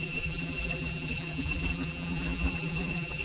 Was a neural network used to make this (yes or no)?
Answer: yes